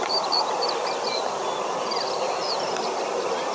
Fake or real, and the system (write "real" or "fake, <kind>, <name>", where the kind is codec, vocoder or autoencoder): real